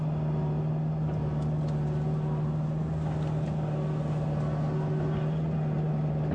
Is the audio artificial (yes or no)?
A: no